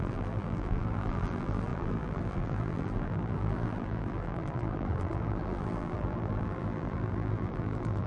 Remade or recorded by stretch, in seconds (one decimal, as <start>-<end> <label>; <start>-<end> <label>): 0.0-8.1 remade